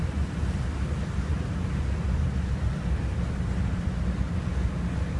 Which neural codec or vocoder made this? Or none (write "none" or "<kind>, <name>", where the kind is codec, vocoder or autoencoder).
none